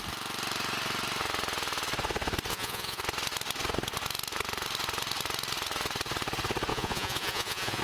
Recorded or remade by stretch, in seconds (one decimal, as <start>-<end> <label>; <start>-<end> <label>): 0.0-2.5 recorded; 2.5-3.0 remade; 3.0-6.7 recorded; 6.7-7.8 remade